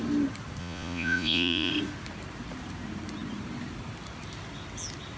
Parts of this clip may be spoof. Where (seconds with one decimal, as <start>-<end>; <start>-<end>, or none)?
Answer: 0.6-1.7

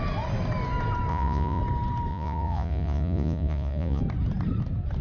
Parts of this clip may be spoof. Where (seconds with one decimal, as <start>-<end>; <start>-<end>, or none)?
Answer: 1.1-1.6; 2.1-4.0

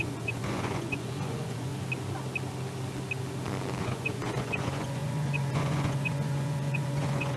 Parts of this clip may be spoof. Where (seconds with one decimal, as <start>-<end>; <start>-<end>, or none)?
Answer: 0.0-1.7; 3.8-7.4

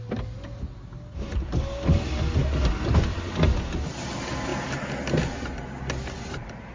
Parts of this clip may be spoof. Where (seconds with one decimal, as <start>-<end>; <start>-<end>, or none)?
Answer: none

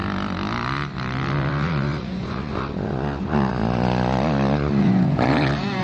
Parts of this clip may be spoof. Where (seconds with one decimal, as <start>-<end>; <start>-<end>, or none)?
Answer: 1.5-3.5; 4.8-5.8